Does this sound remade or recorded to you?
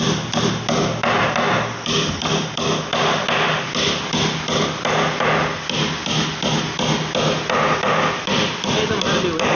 recorded